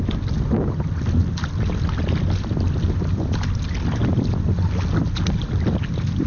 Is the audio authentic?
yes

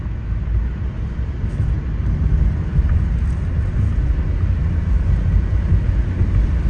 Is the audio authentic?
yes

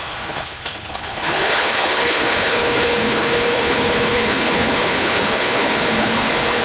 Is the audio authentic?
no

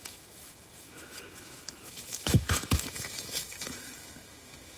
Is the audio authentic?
no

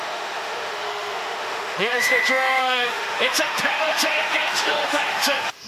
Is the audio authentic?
no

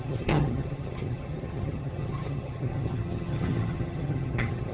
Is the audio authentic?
no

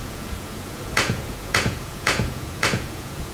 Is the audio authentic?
no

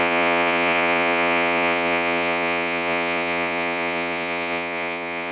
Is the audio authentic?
no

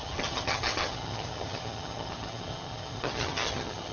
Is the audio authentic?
no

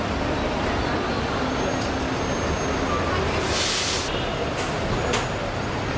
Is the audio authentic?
yes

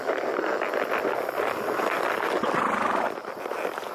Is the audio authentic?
yes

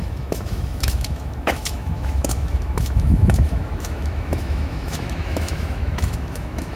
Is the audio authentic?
no